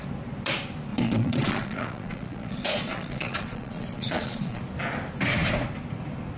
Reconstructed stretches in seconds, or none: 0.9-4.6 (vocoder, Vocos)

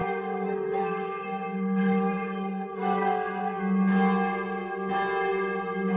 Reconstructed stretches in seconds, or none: 0.0-3.6 (codec, SNAC)

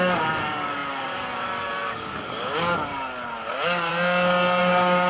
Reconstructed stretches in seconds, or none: 0.0-2.9 (codec, DAC); 3.5-3.9; 4.6-5.1

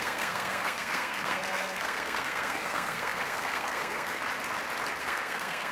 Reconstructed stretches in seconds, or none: 0.0-4.2 (codec, SNAC); 5.0-5.7

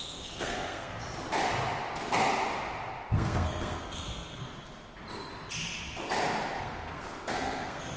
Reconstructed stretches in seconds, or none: 0.0-1.0 (codec, SNAC); 3.1-4.4; 6.6-8.0

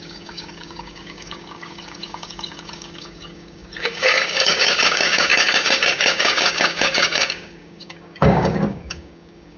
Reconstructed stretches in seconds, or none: 0.0-9.6 (codec, DAC)

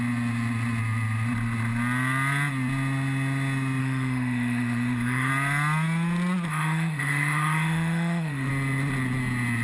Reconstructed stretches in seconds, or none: 3.8-5.3 (autoencoder, DAC-VAE); 6.5-8.5

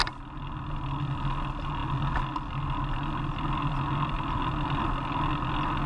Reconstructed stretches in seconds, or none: none